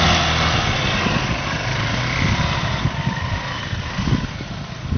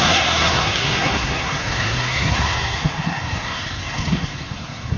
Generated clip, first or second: second